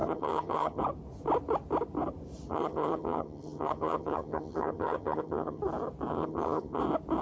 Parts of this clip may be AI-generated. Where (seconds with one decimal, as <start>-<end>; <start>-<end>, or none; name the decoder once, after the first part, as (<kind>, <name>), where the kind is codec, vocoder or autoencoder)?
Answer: 0.0-0.8 (vocoder, HiFi-GAN); 2.5-5.6; 6.1-6.8